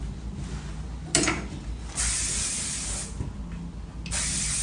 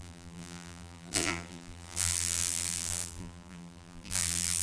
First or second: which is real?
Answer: first